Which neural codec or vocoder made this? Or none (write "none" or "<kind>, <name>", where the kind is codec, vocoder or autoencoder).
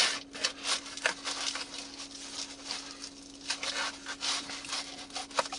none